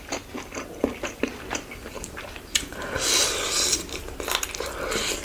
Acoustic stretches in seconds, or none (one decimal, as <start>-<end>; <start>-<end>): 0.0-0.9; 4.0-5.2

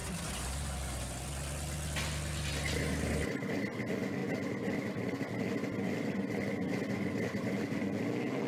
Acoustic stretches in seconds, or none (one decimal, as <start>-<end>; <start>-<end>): 0.0-8.5

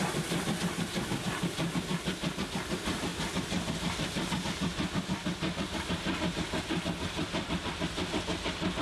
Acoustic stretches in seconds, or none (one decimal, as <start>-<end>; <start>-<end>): 0.0-8.8

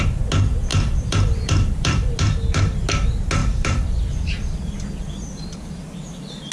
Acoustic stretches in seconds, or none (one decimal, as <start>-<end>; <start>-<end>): 0.0-0.7; 2.1-3.4